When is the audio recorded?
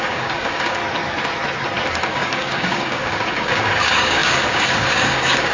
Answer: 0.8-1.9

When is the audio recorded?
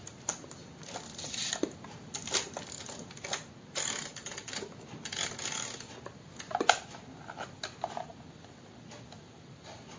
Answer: 0.0-4.0; 4.7-10.0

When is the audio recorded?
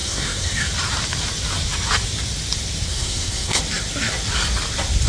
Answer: 0.7-2.9; 3.6-5.1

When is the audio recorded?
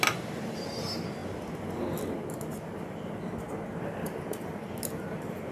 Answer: 0.0-5.5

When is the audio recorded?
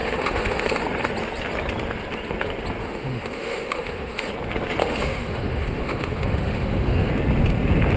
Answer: 0.8-2.8; 4.3-4.8; 7.1-8.0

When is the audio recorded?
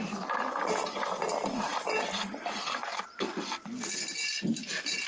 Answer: 0.0-5.1